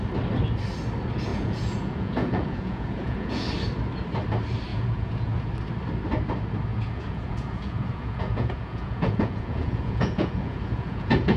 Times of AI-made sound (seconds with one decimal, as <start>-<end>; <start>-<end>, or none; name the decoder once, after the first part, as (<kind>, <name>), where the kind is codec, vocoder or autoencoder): 1.3-3.5 (vocoder, Vocos); 4.7-5.5; 6.7-11.4